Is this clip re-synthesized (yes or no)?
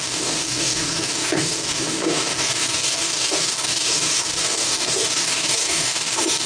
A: yes